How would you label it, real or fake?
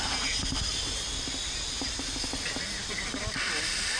real